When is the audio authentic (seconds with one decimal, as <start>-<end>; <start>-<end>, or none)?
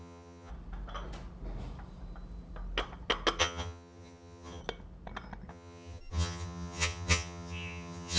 0.5-3.4; 4.6-5.5